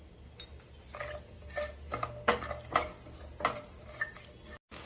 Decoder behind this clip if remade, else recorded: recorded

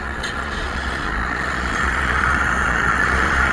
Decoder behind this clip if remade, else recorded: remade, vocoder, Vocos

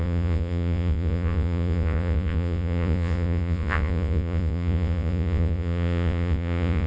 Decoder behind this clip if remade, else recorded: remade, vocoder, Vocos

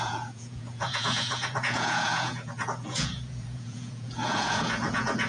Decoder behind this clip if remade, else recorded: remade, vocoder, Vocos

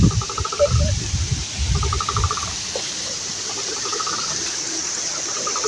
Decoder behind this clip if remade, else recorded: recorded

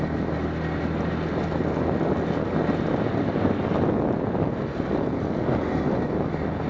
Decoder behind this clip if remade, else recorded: recorded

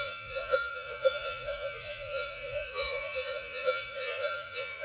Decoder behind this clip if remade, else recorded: remade, vocoder, Vocos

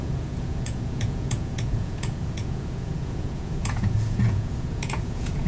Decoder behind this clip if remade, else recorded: remade, vocoder, Vocos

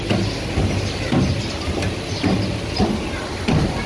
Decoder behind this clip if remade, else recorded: recorded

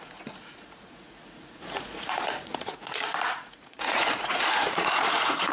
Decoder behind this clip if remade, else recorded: remade, vocoder, Vocos